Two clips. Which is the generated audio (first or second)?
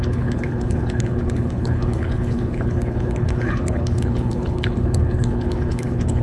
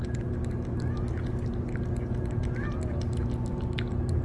first